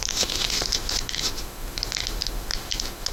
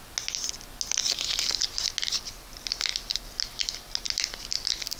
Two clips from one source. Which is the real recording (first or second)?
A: second